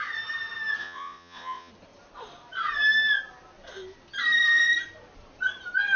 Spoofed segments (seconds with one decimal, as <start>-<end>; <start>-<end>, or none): 0.8-1.7